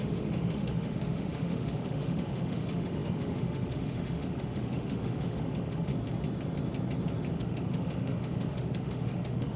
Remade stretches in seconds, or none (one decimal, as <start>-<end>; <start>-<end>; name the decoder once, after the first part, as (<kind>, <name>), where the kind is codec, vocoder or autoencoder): 0.0-5.9 (autoencoder, DAC-VAE); 7.3-9.6